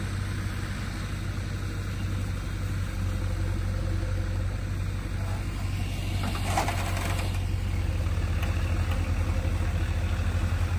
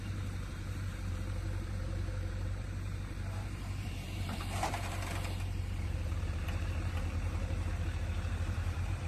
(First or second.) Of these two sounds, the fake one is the second